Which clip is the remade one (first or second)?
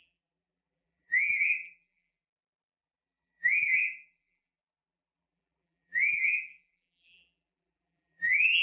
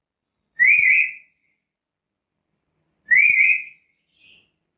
first